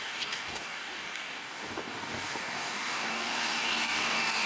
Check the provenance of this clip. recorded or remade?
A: remade